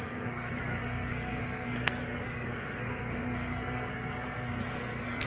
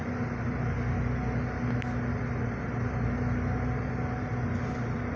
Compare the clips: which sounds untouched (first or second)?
second